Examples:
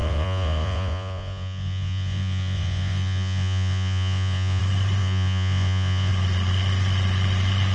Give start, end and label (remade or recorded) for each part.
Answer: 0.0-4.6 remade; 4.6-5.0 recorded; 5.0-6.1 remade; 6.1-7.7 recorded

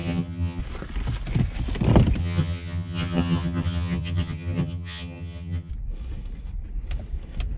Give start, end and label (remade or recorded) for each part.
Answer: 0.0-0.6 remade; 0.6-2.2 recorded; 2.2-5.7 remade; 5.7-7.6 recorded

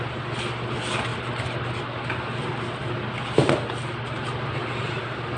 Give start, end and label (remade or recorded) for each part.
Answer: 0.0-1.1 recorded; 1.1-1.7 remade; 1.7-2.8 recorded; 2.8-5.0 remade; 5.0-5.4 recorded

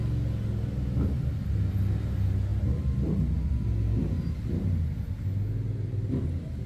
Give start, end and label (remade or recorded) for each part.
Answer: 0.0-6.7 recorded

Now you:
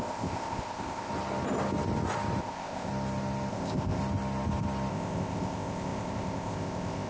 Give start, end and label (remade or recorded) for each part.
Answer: 0.0-1.1 remade; 1.1-2.4 recorded; 2.4-2.9 remade; 2.9-3.5 recorded; 3.5-4.0 remade; 4.0-4.9 recorded; 4.9-7.1 remade

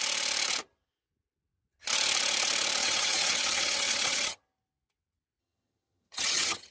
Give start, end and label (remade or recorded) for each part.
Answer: 0.0-2.8 recorded; 2.8-4.4 remade; 4.4-5.4 recorded; 5.4-6.7 remade

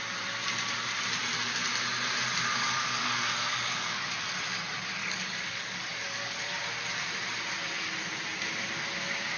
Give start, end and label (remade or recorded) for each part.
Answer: 0.0-2.5 recorded; 2.5-4.1 remade; 4.1-5.0 recorded; 5.0-6.4 remade; 6.4-9.4 recorded

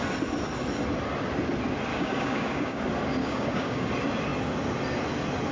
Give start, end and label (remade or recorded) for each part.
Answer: 0.0-1.9 recorded; 1.9-2.8 remade; 2.8-3.2 recorded; 3.2-3.9 remade; 3.9-5.5 recorded